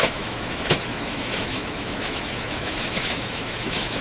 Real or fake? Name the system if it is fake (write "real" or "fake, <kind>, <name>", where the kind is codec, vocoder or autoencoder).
fake, autoencoder, DAC-VAE